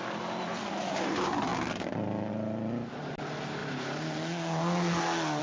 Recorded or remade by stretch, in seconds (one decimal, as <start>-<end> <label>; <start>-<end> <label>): 0.0-5.4 recorded

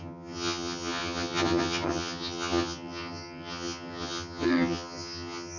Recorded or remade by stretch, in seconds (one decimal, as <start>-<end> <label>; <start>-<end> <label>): 0.0-5.6 remade

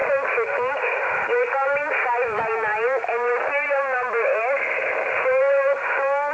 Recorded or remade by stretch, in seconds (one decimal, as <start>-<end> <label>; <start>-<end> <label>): 0.0-6.3 recorded